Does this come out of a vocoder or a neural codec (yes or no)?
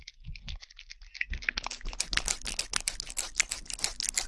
no